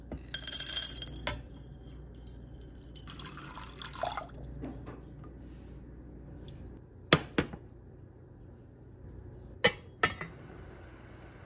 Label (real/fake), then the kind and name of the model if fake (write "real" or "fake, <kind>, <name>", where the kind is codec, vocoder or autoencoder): real